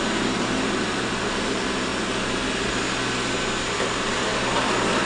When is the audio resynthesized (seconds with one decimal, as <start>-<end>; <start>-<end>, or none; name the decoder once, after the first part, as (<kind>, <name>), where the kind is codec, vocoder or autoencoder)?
0.0-1.9 (vocoder, BigVGAN v2); 3.7-4.3